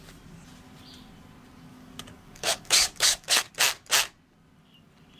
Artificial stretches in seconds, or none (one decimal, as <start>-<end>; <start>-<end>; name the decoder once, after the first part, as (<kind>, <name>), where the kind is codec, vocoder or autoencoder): 1.7-3.5 (codec, DAC)